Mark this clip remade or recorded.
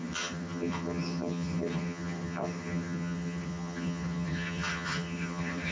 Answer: remade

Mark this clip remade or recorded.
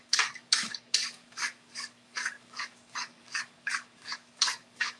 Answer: remade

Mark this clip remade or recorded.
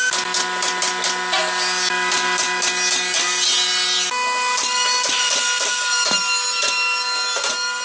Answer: recorded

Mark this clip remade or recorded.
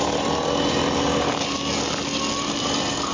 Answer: recorded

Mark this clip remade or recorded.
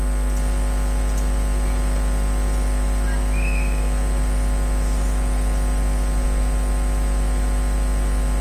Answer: recorded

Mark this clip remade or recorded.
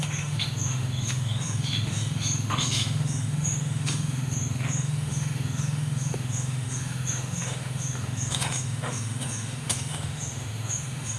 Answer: remade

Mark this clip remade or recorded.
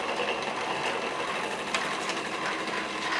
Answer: recorded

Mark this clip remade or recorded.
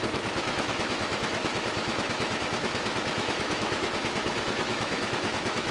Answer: remade